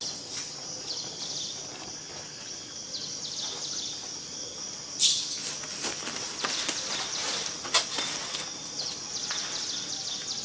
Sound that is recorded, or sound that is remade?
recorded